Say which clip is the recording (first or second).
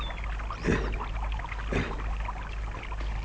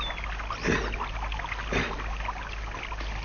second